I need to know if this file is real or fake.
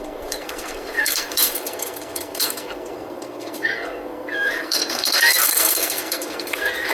fake